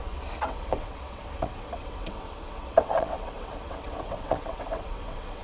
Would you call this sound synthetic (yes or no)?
yes